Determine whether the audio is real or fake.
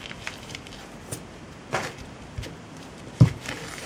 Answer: fake